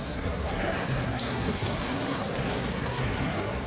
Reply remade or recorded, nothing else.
remade